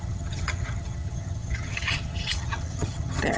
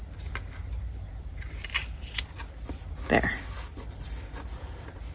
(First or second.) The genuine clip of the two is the second